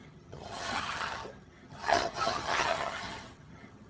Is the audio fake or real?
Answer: fake